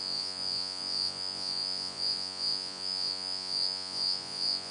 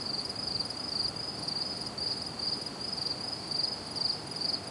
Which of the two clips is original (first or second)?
second